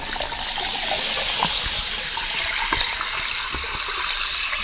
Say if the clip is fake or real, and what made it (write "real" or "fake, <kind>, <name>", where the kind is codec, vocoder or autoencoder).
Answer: real